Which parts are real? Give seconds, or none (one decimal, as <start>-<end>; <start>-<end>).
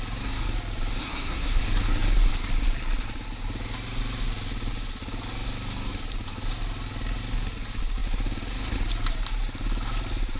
0.0-1.0; 1.6-10.4